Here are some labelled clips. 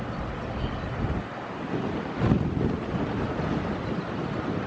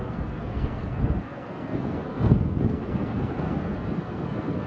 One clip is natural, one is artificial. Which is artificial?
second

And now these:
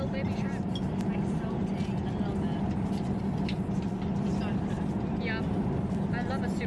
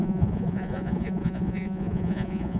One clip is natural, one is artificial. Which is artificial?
second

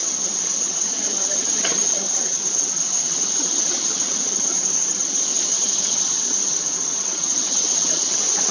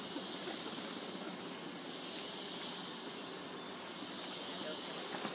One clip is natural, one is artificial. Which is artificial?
first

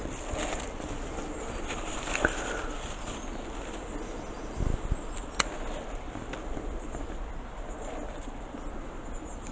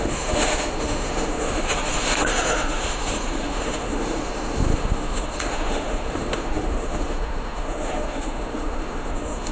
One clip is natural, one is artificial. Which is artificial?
second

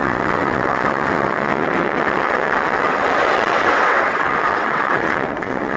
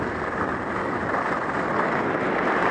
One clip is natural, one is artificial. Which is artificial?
first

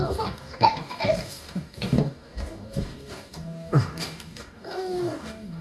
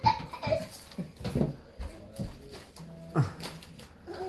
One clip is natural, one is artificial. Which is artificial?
first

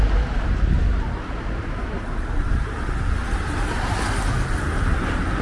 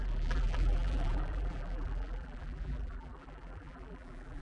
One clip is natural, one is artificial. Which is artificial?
second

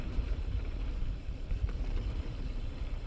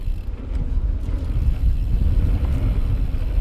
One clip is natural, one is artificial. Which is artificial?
first